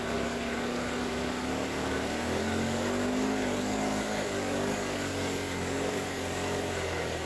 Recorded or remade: remade